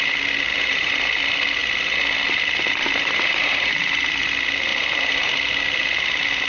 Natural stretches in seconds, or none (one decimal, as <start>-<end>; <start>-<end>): 0.0-0.5; 1.2-2.8; 3.7-4.7; 5.3-6.5

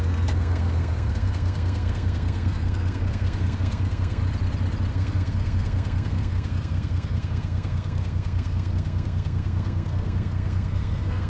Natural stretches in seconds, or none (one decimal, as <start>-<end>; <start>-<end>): 4.2-4.9

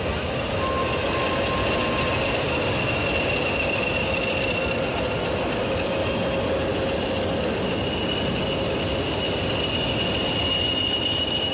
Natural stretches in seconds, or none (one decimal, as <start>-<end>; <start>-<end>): 0.0-11.5

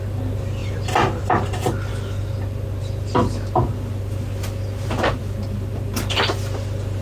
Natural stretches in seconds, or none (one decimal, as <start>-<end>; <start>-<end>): 0.0-7.0

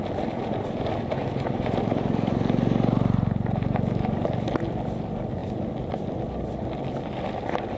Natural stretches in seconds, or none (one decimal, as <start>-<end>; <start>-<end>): 0.0-7.8